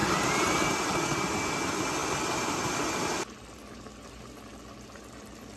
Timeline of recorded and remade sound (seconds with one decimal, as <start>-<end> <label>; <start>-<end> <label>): 0.0-5.6 recorded